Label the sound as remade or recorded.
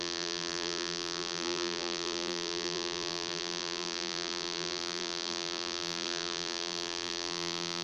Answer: remade